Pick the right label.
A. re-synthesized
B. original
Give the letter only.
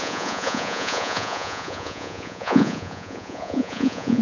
A